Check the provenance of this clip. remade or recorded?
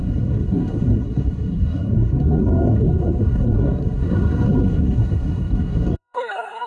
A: remade